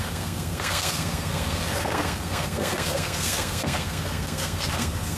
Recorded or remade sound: remade